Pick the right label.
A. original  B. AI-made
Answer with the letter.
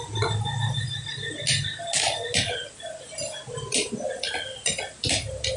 A